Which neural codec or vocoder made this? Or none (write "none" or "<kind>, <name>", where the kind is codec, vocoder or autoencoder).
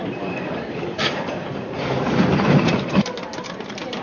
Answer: vocoder, BigVGAN v2